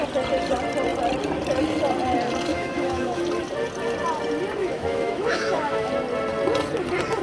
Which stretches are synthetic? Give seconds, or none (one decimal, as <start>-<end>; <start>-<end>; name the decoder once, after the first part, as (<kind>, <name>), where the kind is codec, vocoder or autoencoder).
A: 2.5-3.2 (autoencoder, DAC-VAE); 4.6-5.9